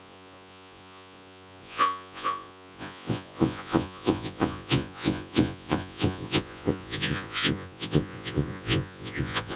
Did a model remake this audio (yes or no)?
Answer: yes